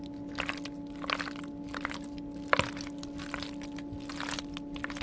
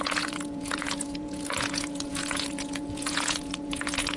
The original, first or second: first